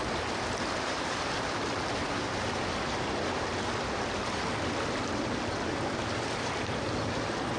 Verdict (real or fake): real